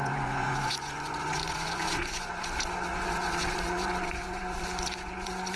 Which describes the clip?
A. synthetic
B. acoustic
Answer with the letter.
A